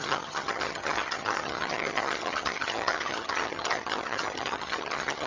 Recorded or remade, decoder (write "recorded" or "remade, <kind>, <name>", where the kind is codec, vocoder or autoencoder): remade, vocoder, HiFi-GAN